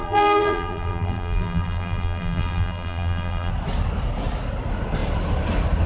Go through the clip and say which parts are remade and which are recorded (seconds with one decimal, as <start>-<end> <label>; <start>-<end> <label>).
0.0-3.5 remade; 3.5-5.9 recorded